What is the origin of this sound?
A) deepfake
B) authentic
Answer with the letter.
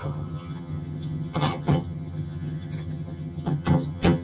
A